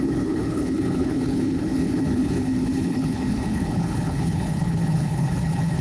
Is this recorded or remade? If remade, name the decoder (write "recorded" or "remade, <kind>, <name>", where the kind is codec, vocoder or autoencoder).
remade, codec, HILCodec